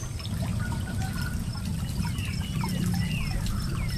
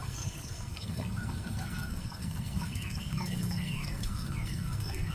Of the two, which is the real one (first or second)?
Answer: first